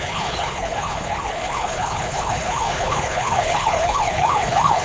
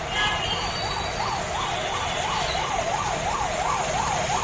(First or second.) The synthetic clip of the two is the first